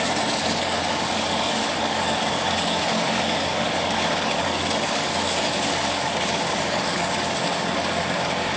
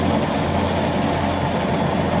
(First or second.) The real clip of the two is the second